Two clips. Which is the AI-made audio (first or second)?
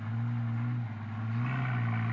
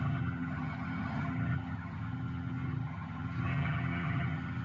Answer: second